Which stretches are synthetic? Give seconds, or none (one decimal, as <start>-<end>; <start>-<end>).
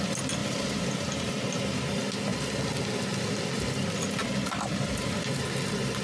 0.4-1.3; 4.2-4.8